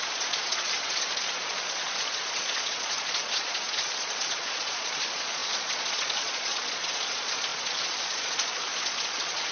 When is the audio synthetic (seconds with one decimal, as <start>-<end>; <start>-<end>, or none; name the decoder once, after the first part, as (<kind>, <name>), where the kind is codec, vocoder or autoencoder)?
0.0-9.5 (vocoder, Vocos)